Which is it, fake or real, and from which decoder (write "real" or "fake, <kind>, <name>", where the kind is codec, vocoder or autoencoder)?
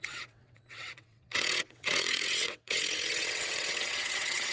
fake, vocoder, WaveNeXt